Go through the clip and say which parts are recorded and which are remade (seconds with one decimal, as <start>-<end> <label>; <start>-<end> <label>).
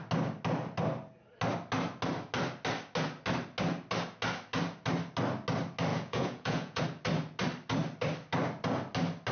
0.0-5.9 recorded; 5.9-6.8 remade; 6.8-9.3 recorded